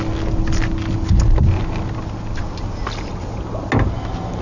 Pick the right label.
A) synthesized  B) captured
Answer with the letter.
B